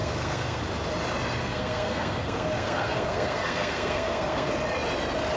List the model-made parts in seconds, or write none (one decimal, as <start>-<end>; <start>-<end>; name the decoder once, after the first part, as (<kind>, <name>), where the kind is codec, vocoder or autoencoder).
0.0-0.6 (codec, SNAC); 1.4-4.5

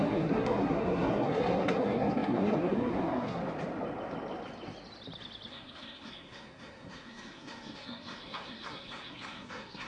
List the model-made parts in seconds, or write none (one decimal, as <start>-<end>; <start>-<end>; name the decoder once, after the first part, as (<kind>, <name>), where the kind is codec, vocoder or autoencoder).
0.0-3.4 (codec, SNAC); 5.5-9.9